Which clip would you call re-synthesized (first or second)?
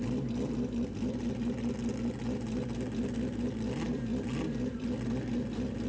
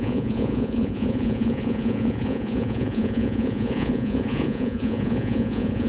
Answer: second